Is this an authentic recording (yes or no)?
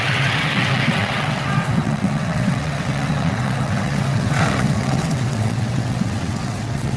no